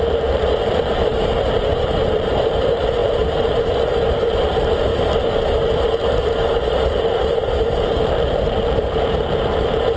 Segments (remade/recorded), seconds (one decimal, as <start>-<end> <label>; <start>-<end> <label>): 0.0-4.9 remade; 4.9-6.9 recorded; 6.9-10.0 remade